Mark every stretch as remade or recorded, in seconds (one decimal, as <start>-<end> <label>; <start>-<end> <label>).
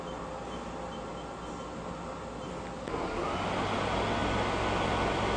0.0-5.4 recorded